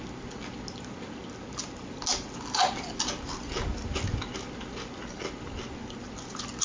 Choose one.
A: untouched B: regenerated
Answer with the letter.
A